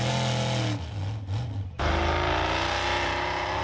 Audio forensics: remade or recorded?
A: recorded